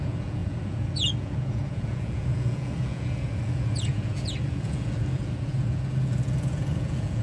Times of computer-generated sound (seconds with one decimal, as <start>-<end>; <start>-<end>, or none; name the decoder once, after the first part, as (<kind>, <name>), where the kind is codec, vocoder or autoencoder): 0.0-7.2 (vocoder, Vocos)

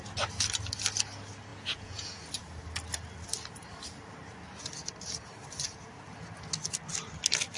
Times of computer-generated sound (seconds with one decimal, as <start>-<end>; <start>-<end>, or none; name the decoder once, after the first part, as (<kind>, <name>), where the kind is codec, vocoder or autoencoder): 1.5-2.2 (vocoder, Vocos)

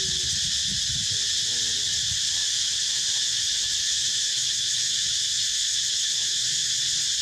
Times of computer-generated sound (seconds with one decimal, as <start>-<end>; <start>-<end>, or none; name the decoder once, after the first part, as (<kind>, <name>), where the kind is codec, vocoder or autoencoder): 2.4-6.7 (autoencoder, DAC-VAE)

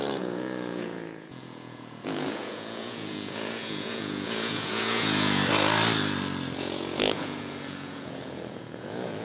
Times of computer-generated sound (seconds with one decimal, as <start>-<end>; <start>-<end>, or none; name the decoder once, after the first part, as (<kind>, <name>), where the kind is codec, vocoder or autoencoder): 0.0-5.4 (vocoder, Vocos); 6.6-9.2